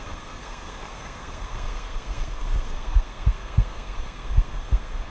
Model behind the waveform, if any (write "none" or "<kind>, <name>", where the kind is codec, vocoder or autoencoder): codec, SNAC